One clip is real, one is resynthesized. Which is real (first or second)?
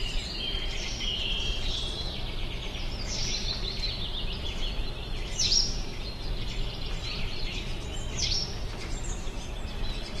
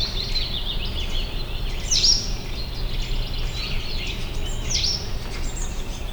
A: second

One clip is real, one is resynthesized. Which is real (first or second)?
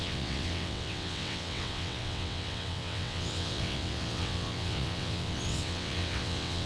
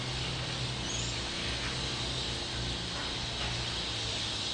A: second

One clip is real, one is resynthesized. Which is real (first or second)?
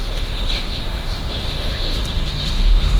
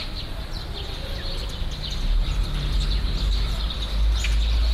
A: second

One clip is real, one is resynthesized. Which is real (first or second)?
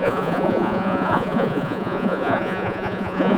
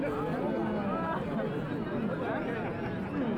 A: second